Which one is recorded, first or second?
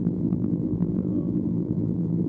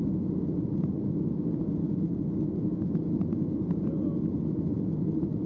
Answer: second